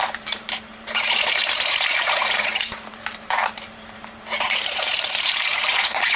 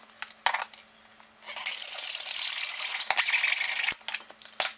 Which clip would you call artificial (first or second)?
first